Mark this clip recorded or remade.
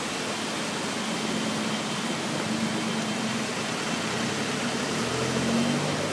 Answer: recorded